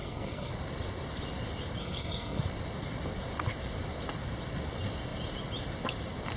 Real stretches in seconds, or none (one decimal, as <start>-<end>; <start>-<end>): 0.5-1.8; 2.4-6.4